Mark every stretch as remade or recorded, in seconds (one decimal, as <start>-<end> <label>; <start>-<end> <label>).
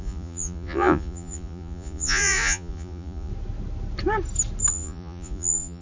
0.0-3.3 remade; 3.3-4.7 recorded; 4.7-5.8 remade